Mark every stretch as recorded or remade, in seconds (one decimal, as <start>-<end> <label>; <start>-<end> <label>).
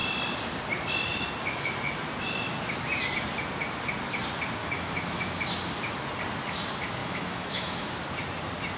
0.0-4.6 recorded; 4.6-5.3 remade; 5.3-7.0 recorded; 7.0-7.9 remade; 7.9-8.8 recorded